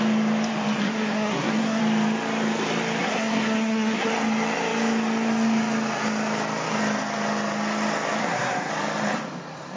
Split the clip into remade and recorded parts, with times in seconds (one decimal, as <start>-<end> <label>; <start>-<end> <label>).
0.0-0.8 recorded; 0.8-1.8 remade; 1.8-3.0 recorded; 3.0-4.1 remade; 4.1-8.2 recorded; 8.2-8.7 remade; 8.7-9.8 recorded